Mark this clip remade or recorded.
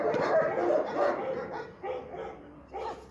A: recorded